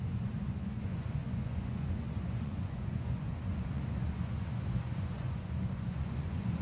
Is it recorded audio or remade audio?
remade